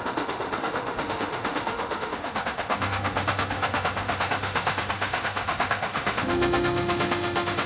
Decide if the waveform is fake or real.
fake